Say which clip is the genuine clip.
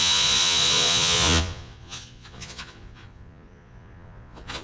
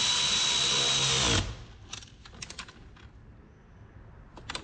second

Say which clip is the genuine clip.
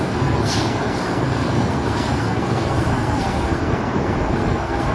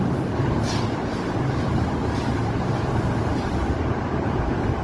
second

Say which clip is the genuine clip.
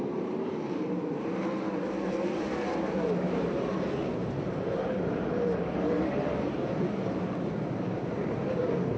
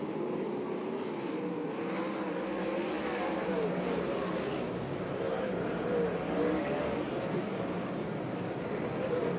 second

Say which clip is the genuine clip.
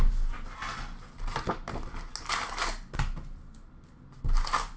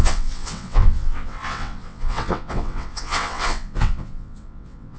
first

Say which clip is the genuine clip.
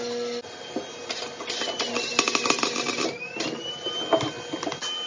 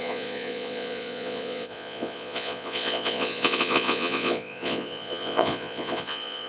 first